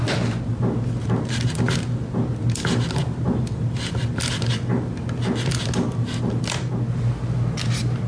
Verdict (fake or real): real